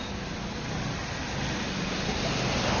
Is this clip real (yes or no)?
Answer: yes